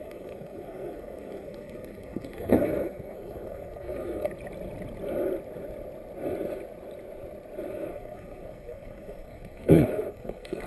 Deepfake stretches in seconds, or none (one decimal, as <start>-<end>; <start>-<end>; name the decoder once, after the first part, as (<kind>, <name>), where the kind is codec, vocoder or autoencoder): 0.0-4.3 (codec, SNAC); 7.7-10.7